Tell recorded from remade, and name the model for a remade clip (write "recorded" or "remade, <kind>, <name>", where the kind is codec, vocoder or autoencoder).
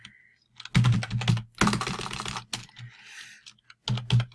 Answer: recorded